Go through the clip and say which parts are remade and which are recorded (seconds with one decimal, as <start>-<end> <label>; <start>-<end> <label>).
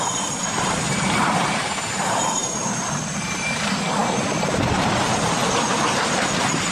0.0-6.7 remade